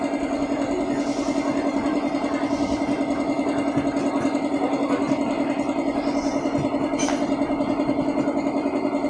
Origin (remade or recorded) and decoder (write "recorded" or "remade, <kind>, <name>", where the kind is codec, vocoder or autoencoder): recorded